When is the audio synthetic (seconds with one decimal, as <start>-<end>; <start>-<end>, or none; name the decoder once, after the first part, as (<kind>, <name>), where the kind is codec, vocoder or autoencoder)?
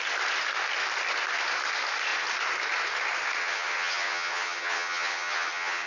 3.4-5.9 (vocoder, HiFi-GAN)